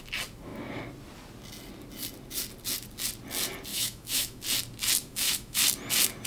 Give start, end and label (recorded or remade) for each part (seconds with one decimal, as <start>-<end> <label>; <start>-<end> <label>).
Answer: 0.0-3.7 recorded; 3.7-4.4 remade; 4.4-5.0 recorded; 5.0-5.6 remade; 5.6-6.3 recorded